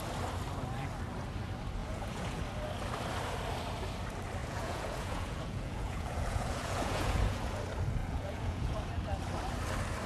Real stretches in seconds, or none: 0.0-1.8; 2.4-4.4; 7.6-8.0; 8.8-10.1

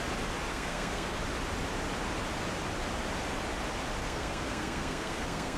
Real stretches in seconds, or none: 0.0-0.5; 1.2-4.0